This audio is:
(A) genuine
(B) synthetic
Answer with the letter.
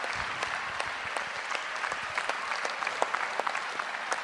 B